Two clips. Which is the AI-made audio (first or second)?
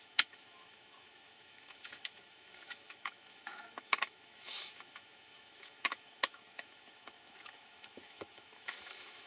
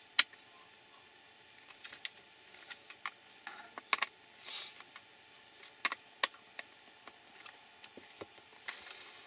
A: first